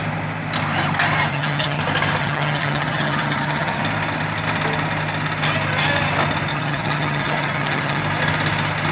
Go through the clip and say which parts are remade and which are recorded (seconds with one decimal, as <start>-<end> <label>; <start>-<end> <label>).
0.0-1.3 recorded; 1.3-1.8 remade; 1.8-2.2 recorded; 2.2-3.8 remade; 3.8-6.5 recorded; 6.5-8.0 remade; 8.0-8.9 recorded